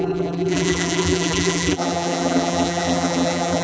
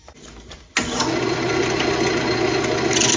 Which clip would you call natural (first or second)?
second